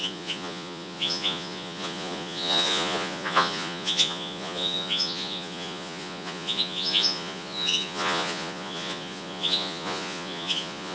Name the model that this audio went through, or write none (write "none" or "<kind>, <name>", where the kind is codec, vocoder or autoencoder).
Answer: vocoder, Vocos